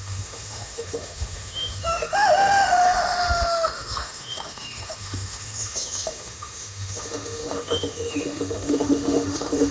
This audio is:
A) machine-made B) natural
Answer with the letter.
A